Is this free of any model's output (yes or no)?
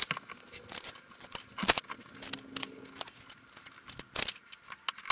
yes